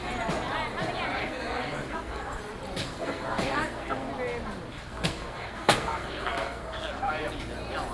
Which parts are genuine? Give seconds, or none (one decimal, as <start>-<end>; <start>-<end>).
0.0-1.2; 2.4-2.8; 4.1-4.7; 7.1-7.9